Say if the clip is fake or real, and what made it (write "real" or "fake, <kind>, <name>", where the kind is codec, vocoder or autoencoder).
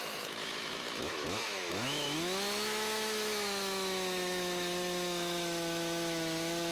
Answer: fake, autoencoder, DAC-VAE